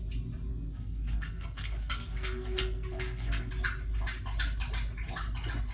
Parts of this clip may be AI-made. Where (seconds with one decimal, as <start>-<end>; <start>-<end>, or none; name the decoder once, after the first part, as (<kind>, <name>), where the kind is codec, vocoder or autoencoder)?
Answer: 0.5-3.5 (codec, SNAC)